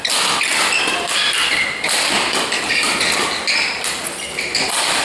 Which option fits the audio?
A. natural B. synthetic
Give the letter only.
A